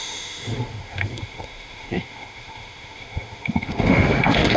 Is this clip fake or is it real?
fake